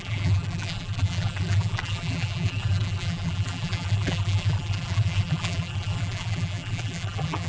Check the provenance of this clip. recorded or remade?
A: remade